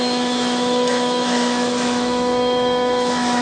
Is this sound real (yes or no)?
no